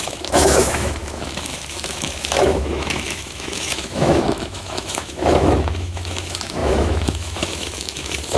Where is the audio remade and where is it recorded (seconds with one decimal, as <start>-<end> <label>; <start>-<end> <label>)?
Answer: 0.0-8.4 remade